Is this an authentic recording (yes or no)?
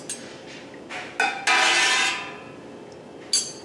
yes